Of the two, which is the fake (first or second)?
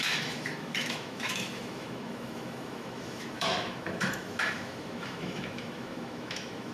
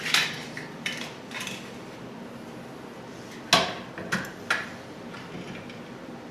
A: first